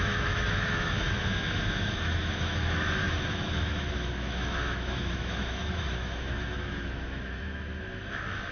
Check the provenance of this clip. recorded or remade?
remade